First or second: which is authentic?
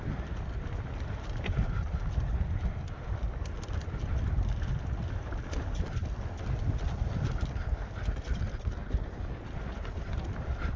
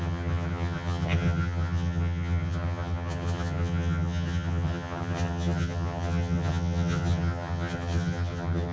first